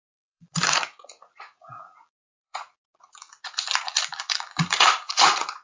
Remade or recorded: remade